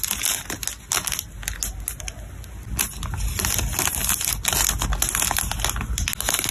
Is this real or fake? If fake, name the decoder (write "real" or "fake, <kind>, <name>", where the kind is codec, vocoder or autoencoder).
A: real